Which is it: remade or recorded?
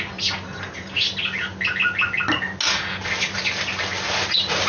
recorded